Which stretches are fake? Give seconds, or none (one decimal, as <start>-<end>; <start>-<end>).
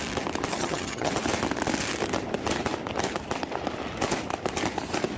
0.5-1.1